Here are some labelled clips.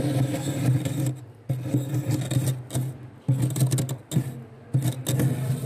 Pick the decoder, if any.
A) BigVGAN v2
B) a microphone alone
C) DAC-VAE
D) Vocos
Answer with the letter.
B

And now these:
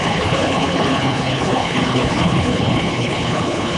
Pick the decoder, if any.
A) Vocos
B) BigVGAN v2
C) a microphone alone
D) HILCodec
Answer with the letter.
D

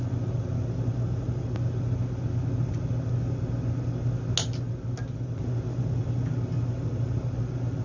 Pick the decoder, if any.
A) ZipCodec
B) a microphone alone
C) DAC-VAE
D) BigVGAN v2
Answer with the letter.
B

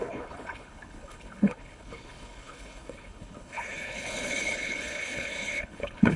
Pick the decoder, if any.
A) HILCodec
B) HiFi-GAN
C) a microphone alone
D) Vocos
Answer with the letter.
A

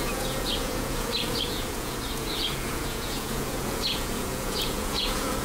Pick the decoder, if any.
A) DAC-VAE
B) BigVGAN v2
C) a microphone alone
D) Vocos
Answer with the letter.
D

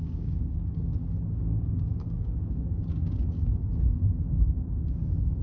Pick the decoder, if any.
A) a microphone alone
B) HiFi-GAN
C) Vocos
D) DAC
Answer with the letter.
D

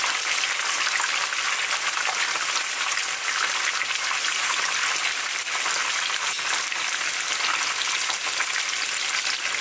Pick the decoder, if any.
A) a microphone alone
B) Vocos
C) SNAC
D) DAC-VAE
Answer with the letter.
A